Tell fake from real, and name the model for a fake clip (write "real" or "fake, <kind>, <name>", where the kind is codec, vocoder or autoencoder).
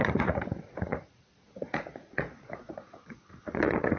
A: fake, vocoder, Vocos